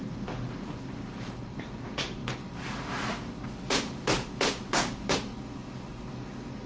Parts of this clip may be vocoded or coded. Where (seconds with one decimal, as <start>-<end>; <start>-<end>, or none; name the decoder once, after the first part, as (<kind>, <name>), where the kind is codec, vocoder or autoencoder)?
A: 0.0-2.2 (vocoder, BigVGAN v2); 4.7-5.3